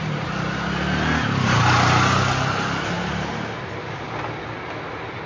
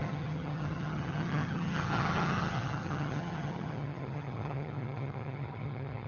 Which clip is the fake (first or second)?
second